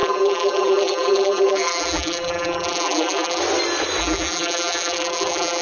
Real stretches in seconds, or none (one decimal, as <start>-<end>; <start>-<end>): 3.4-4.0